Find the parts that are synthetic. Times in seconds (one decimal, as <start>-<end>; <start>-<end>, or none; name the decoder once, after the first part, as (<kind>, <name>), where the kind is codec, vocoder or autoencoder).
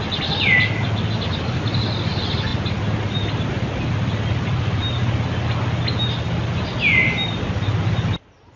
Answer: none